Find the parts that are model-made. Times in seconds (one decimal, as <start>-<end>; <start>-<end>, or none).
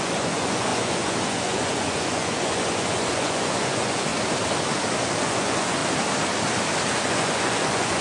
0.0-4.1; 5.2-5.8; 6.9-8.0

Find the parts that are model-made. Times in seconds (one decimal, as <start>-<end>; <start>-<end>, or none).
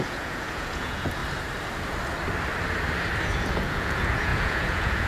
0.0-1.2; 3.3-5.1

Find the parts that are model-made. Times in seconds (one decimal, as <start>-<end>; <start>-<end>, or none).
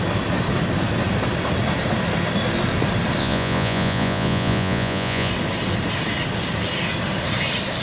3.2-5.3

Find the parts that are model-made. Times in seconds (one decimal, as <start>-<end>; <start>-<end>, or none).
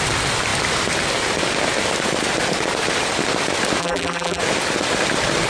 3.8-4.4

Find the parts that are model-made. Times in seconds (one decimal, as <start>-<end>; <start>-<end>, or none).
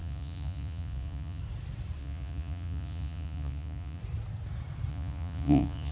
0.0-1.4; 2.0-4.0; 4.9-5.9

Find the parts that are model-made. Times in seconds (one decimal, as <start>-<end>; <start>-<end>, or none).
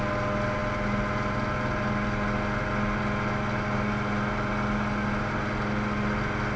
none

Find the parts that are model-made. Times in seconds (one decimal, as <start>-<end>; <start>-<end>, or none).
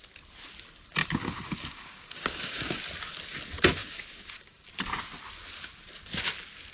1.0-2.8; 3.8-4.7